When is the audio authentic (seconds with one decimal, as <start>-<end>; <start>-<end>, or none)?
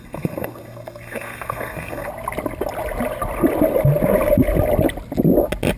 2.1-5.8